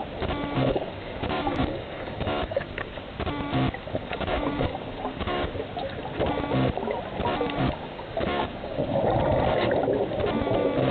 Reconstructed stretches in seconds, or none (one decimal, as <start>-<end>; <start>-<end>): 0.7-3.0; 4.0-5.6; 7.6-9.0